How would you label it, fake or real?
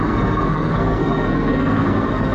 fake